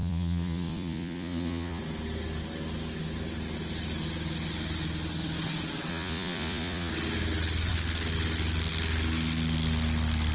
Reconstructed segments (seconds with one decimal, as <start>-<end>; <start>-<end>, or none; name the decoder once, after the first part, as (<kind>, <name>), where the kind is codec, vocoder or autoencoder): 0.0-1.8 (vocoder, Vocos); 5.9-6.9

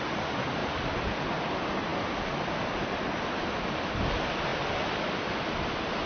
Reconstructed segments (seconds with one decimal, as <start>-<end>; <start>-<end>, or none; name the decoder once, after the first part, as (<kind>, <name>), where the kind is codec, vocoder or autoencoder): none

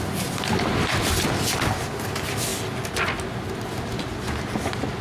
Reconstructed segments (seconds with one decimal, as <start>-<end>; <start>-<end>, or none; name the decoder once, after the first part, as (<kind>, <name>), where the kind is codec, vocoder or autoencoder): none

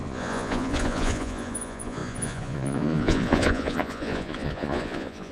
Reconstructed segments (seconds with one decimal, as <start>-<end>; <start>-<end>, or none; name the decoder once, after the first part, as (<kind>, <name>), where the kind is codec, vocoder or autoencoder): 0.0-5.3 (vocoder, Vocos)

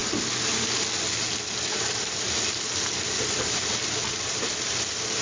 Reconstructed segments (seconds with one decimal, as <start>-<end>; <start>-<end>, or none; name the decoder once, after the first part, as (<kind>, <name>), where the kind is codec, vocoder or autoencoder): none

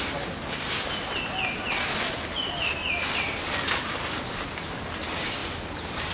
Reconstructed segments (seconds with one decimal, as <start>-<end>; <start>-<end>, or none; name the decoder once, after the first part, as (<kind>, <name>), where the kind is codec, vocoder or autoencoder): none

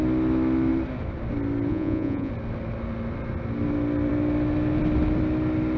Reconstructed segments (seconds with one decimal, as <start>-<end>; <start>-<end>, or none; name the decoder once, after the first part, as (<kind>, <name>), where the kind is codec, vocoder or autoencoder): 1.7-2.3 (vocoder, Vocos)

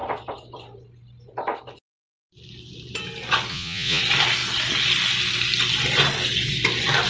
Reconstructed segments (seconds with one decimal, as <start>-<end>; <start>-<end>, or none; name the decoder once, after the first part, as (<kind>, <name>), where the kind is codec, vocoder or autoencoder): 3.5-4.0 (vocoder, Vocos)